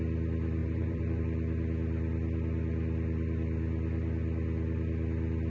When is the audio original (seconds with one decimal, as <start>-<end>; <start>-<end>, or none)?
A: 0.0-0.6; 1.2-5.5